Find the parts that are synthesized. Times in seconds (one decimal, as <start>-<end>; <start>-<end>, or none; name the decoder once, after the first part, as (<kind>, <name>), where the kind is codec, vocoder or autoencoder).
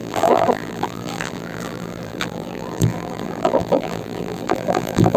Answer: 0.0-5.2 (vocoder, BigVGAN v2)